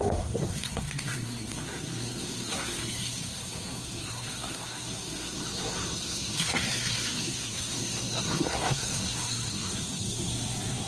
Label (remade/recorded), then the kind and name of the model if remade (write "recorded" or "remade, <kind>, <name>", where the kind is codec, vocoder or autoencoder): remade, codec, SNAC